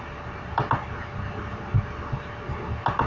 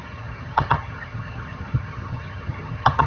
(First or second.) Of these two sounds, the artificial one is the second